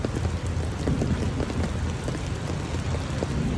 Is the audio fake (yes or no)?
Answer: no